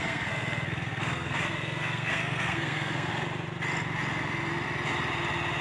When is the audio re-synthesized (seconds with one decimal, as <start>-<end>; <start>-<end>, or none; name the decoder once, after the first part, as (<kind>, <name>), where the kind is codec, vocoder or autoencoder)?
0.0-3.1 (codec, SNAC)